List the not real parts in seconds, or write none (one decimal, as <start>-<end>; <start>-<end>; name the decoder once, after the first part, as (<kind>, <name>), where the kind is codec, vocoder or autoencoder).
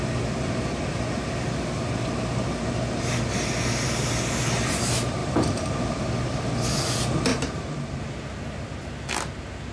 5.2-6.0 (vocoder, BigVGAN v2); 7.3-8.0